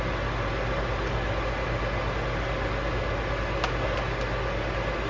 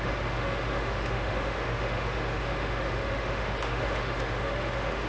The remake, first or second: second